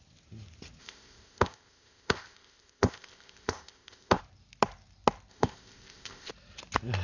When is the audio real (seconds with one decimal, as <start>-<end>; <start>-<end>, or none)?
0.0-0.8; 4.2-5.3; 6.3-7.0